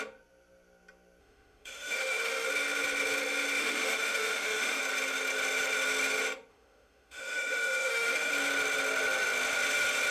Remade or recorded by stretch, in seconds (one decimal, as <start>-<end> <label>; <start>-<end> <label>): 0.0-1.2 recorded; 1.2-2.5 remade; 2.5-3.6 recorded; 3.6-4.8 remade; 4.8-6.5 recorded; 6.5-8.3 remade; 8.3-10.1 recorded